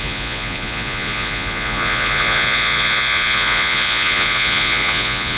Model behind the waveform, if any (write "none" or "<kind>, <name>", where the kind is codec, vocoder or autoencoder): vocoder, Vocos